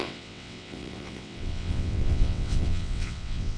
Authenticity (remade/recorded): remade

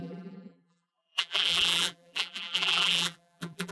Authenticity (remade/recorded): remade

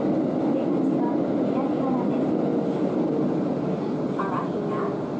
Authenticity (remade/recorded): recorded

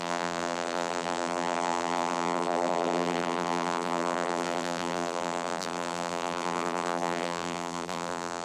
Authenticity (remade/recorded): remade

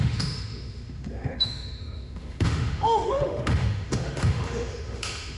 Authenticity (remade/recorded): remade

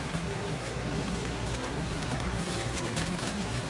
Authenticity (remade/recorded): remade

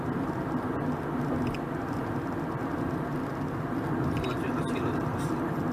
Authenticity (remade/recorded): recorded